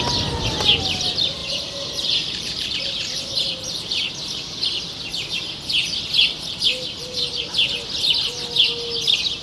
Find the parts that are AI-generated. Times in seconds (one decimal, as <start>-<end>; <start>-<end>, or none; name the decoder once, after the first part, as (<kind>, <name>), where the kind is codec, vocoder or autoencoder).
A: 1.4-4.1 (vocoder, BigVGAN v2); 6.2-7.4